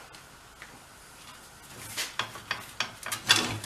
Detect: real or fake real